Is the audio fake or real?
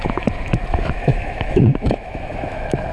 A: fake